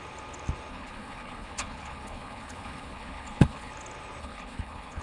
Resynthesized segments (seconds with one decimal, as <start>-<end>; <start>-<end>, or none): 0.7-3.7; 4.2-5.0